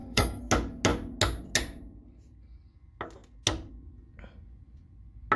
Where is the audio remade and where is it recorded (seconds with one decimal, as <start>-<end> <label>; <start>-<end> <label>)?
0.0-0.5 remade; 0.5-5.4 recorded